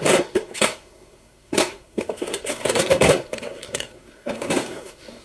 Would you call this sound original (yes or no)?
no